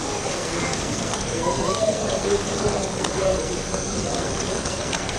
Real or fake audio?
fake